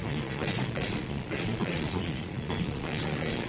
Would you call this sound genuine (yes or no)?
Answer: no